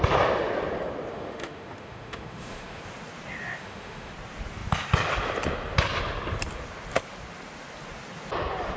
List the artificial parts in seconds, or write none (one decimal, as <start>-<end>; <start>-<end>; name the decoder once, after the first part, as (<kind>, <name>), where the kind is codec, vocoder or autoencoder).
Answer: 1.1-2.8 (autoencoder, DAC-VAE); 3.6-4.1